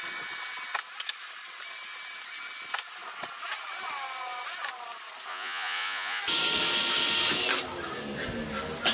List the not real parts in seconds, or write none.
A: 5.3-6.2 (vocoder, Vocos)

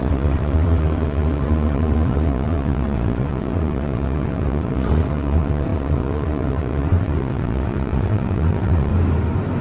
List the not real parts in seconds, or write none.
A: 0.0-8.9 (vocoder, WaveNeXt)